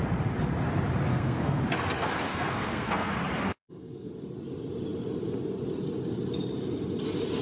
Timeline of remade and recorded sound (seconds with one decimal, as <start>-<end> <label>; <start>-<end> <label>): 0.0-1.1 recorded; 1.1-1.6 remade; 1.6-2.3 recorded; 2.3-3.1 remade; 3.1-3.6 recorded; 3.6-4.1 remade; 4.1-7.4 recorded